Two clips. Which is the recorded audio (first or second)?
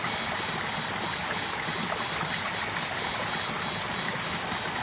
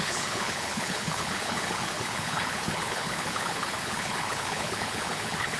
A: first